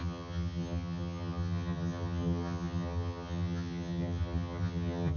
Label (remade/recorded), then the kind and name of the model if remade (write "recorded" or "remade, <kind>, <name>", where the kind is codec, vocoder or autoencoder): remade, vocoder, HiFi-GAN